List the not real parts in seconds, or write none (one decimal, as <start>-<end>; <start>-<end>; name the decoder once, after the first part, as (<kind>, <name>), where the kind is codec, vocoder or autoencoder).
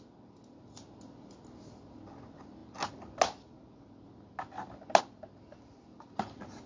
none